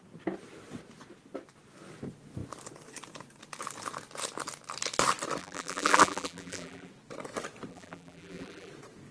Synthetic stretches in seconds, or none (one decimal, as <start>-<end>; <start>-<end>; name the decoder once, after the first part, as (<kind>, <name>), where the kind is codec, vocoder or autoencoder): 5.4-6.9 (vocoder, BigVGAN v2); 7.7-8.7